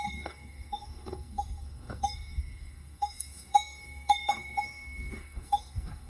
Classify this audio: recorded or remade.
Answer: remade